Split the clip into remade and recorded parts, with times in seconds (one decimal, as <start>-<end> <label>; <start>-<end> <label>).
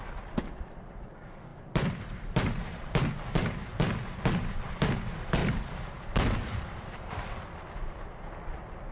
0.0-1.5 recorded; 1.5-3.1 remade; 3.1-5.4 recorded; 5.4-7.4 remade; 7.4-8.9 recorded